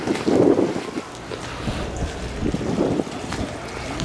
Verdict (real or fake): real